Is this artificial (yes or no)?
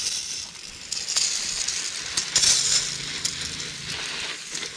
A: no